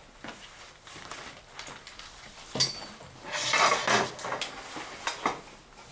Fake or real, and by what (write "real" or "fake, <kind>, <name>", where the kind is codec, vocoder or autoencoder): real